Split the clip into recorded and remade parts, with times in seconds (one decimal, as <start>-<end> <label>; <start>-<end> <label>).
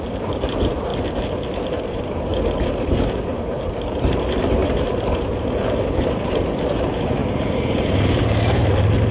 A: 0.0-0.9 remade; 0.9-1.9 recorded; 1.9-7.2 remade; 7.2-9.1 recorded